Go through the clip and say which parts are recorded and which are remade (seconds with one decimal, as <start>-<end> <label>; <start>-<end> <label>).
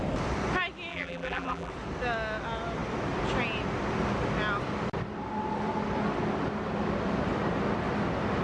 0.0-0.9 recorded; 0.9-1.7 remade; 1.7-8.4 recorded